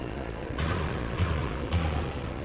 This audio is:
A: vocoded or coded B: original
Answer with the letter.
A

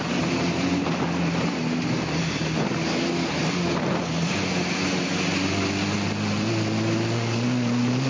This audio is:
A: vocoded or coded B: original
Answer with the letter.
B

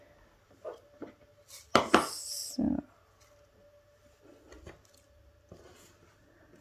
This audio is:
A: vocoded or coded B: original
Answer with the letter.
B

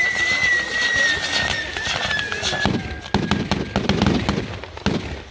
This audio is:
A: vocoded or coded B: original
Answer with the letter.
B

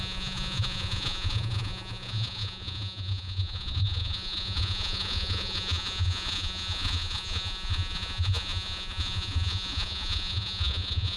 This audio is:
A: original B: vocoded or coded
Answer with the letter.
B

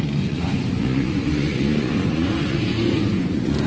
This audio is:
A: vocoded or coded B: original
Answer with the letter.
A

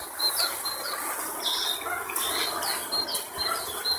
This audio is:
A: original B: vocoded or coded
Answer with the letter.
A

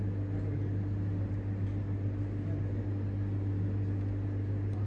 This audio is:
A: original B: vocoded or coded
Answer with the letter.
A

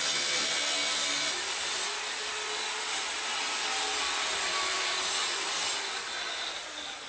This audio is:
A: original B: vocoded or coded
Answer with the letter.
A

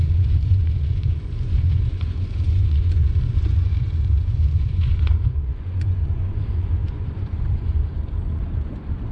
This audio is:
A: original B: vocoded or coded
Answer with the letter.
B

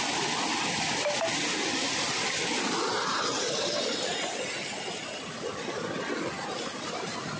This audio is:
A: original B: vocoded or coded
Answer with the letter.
A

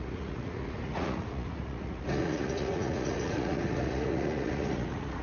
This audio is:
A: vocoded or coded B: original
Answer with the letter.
A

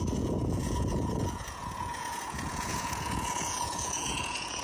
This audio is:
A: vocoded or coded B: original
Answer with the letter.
A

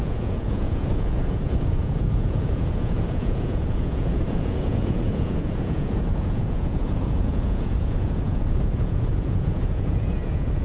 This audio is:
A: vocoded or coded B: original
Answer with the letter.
A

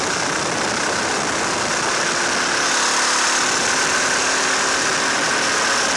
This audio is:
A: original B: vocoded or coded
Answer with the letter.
A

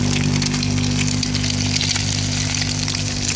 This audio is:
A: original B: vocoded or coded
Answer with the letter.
A